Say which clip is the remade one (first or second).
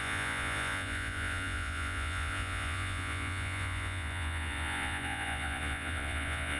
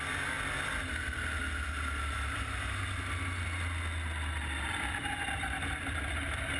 first